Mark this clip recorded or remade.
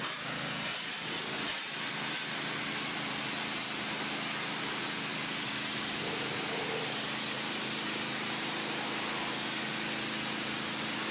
recorded